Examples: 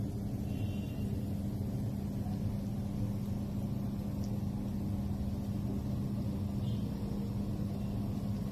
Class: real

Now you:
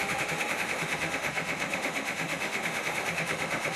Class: fake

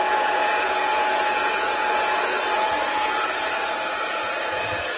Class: fake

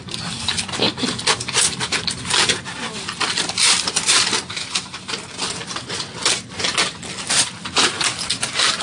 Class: fake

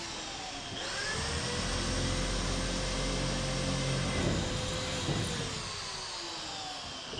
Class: real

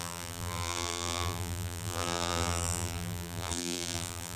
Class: fake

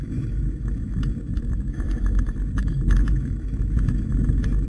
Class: fake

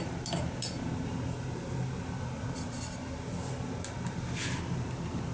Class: real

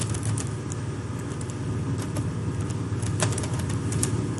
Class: real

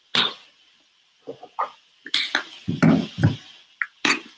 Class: real